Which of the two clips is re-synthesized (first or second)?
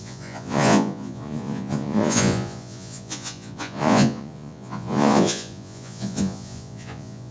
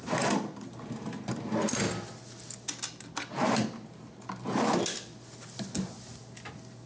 first